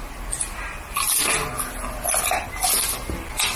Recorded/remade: recorded